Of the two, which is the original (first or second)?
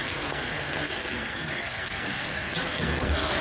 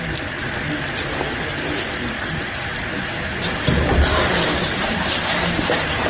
second